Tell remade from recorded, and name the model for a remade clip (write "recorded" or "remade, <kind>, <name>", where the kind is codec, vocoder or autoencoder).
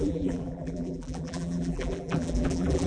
remade, vocoder, BigVGAN v2